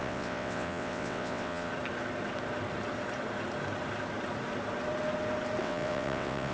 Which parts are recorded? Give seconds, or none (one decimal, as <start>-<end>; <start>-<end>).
1.7-5.6